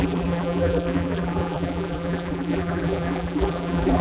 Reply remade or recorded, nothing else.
remade